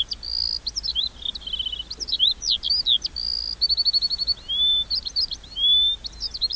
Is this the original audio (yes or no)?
yes